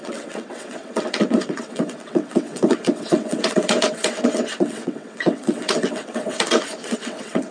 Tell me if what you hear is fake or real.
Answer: fake